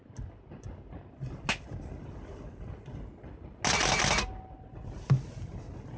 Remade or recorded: recorded